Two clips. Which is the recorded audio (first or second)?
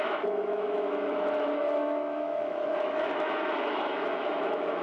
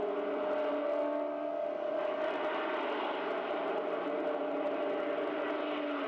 second